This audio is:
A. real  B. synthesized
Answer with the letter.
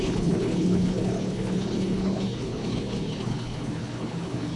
B